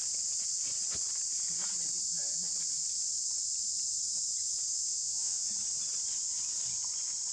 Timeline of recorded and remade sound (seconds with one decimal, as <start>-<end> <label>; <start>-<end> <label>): 0.0-4.9 recorded; 4.9-5.5 remade; 5.5-7.3 recorded